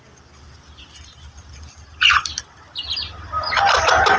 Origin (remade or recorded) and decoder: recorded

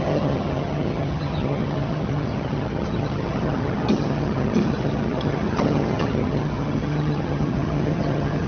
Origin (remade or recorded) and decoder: remade, vocoder, HiFi-GAN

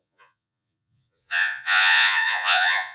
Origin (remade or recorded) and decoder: remade, vocoder, Vocos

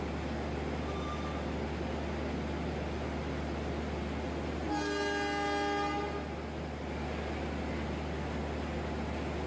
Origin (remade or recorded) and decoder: recorded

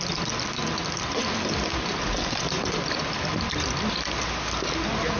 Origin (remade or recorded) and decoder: recorded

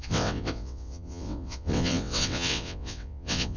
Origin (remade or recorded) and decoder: remade, vocoder, WaveNeXt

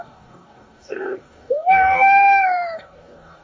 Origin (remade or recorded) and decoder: remade, codec, DAC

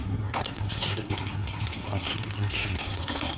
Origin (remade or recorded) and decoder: remade, codec, SNAC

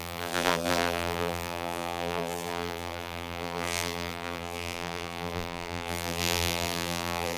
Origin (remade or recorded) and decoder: remade, vocoder, BigVGAN v2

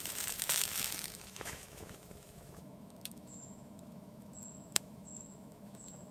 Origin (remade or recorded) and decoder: remade, autoencoder, DAC-VAE